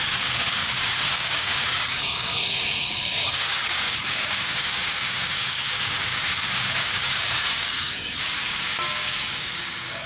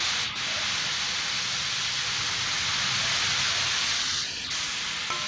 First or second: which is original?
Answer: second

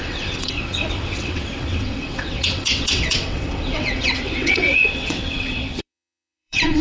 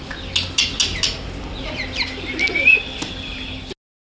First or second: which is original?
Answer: second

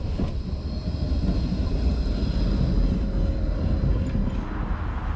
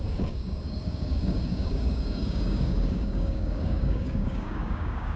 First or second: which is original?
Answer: first